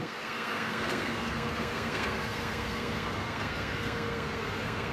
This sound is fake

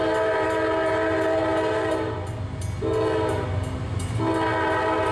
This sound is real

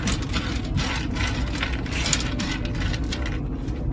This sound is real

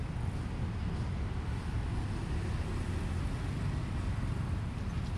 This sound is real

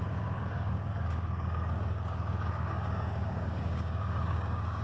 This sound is fake